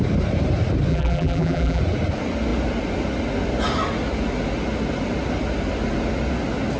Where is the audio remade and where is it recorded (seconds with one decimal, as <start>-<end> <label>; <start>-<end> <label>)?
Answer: 0.0-0.9 recorded; 0.9-1.8 remade; 1.8-6.8 recorded